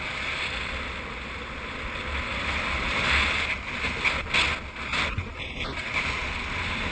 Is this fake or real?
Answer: real